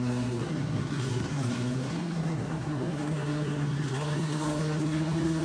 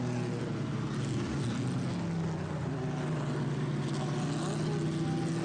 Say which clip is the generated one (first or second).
first